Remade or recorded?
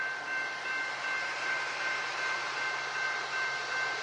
recorded